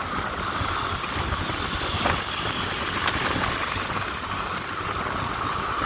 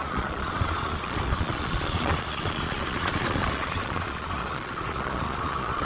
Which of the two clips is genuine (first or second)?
first